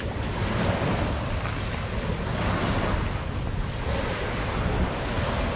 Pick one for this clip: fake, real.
real